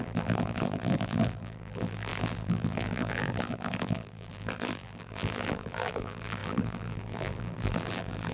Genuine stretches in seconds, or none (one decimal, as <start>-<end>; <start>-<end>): none